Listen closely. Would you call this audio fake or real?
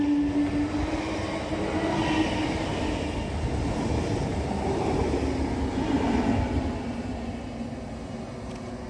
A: real